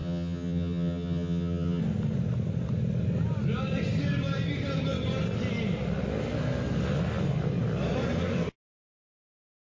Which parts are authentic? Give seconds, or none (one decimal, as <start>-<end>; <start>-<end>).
1.8-9.6